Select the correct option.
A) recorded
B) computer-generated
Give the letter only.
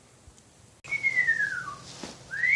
A